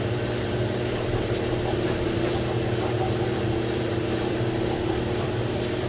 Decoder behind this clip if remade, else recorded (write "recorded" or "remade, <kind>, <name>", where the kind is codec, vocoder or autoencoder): remade, vocoder, BigVGAN v2